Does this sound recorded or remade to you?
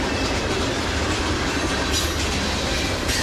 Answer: recorded